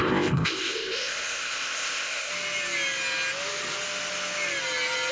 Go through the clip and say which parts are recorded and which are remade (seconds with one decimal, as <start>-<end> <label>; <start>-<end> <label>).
0.0-2.3 remade; 2.3-5.1 recorded